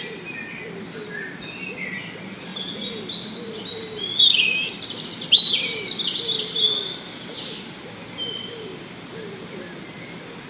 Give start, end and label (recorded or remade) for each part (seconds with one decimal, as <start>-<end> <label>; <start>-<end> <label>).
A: 0.0-10.5 recorded